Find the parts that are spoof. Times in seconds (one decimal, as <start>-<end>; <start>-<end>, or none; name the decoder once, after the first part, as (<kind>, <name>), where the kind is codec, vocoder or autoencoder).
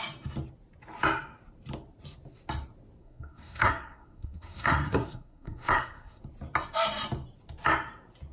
3.0-6.2 (codec, SNAC)